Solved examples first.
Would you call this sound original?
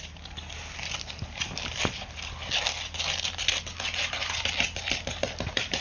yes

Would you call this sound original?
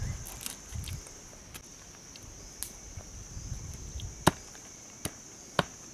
yes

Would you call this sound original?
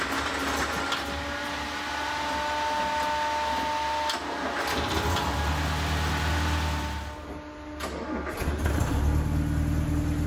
yes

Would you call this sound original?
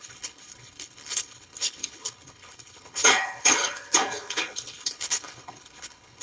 no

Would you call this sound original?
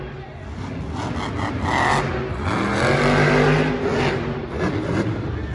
yes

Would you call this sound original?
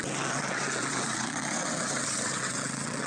no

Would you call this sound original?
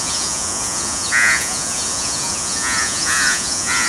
no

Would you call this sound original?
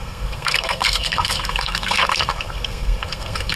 no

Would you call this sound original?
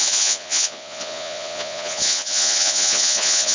no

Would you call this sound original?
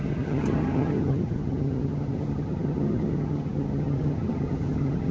no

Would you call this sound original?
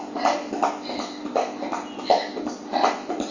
yes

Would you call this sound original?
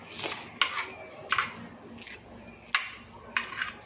yes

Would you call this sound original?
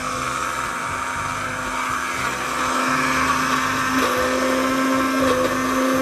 yes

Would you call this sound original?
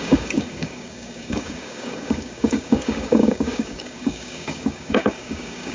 no